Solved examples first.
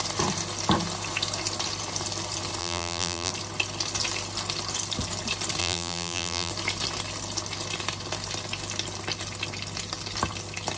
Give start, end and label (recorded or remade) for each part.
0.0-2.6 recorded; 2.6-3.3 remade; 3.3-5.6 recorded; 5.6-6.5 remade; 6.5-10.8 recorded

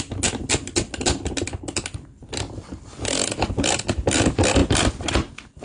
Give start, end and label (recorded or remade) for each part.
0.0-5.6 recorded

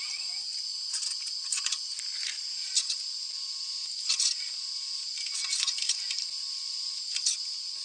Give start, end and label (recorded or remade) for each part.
0.0-7.8 recorded

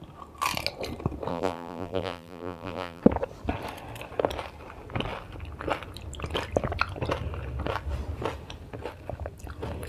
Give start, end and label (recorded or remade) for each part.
0.0-1.3 recorded; 1.3-3.0 remade; 3.0-9.9 recorded